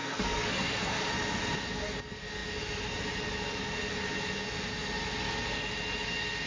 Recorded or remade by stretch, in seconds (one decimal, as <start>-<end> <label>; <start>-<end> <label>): 0.0-1.0 remade; 1.0-6.5 recorded